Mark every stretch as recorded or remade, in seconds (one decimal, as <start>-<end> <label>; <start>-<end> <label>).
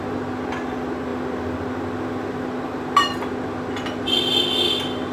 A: 0.0-5.1 recorded